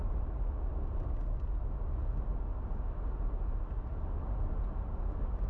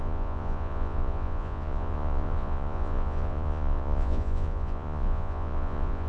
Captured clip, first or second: first